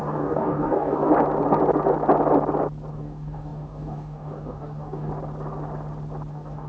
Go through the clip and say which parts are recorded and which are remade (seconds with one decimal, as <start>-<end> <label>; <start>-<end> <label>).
0.0-1.1 remade; 1.1-2.9 recorded; 2.9-5.1 remade; 5.1-6.3 recorded; 6.3-6.7 remade